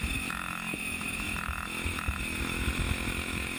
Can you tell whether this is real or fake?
fake